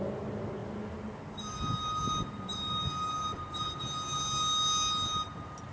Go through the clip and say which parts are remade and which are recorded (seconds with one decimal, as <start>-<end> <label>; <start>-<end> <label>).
0.0-5.7 recorded